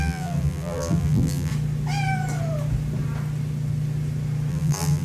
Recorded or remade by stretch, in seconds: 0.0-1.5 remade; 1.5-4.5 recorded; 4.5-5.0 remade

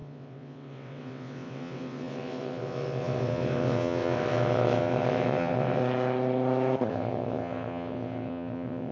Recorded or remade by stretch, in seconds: 0.0-5.8 remade; 5.8-6.9 recorded; 6.9-8.9 remade

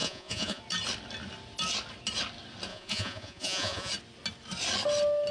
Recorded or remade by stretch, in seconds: 0.0-0.6 remade; 0.6-2.7 recorded; 2.7-3.9 remade; 3.9-5.3 recorded

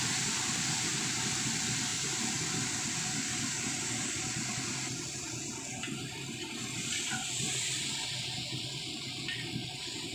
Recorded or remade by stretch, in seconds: 0.0-10.1 recorded

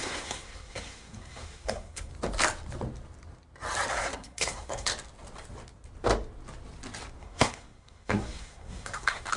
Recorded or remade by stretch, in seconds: 0.0-2.1 remade; 2.1-3.9 recorded; 3.9-4.9 remade; 4.9-7.2 recorded; 7.2-9.4 remade

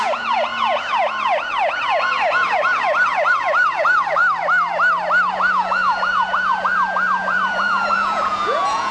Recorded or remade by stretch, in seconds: 0.0-4.2 remade; 4.2-5.3 recorded; 5.3-8.9 remade

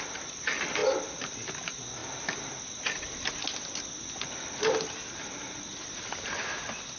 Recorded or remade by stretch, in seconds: 0.0-0.8 recorded; 0.8-1.5 remade; 1.5-7.0 recorded